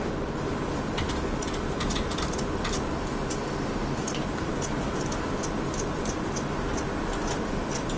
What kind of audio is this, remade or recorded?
recorded